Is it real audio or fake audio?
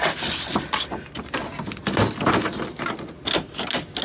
real